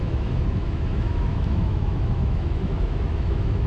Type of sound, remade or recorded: remade